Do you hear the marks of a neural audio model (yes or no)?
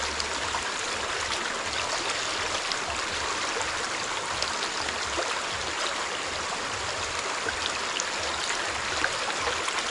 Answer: no